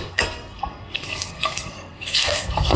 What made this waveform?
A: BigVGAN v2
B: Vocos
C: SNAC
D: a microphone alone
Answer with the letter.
C